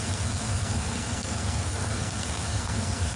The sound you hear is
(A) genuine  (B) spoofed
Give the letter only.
B